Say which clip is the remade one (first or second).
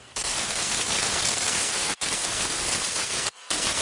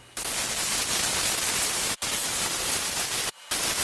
first